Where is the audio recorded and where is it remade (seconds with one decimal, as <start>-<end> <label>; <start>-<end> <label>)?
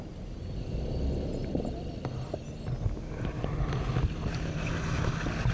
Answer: 0.0-5.5 recorded